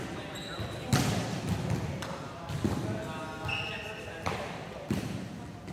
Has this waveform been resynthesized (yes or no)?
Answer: no